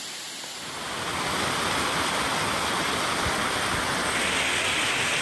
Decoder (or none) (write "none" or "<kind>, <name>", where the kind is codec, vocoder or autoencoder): none